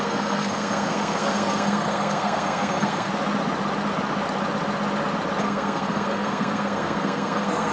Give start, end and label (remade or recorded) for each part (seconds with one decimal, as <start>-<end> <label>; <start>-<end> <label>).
0.0-3.1 remade; 3.1-5.4 recorded; 5.4-7.7 remade